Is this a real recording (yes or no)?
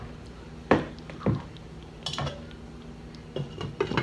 yes